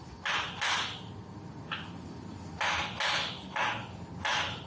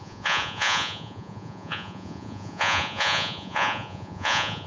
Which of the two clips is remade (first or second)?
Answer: second